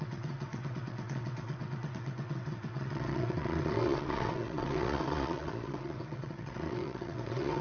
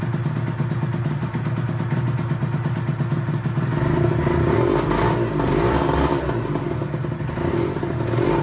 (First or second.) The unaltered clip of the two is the second